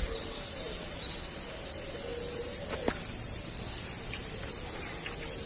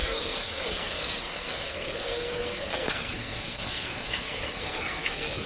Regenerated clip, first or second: second